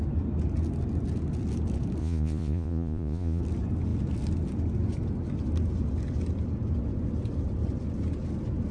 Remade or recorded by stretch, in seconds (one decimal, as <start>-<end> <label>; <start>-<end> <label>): 0.0-2.0 recorded; 2.0-3.4 remade; 3.4-8.7 recorded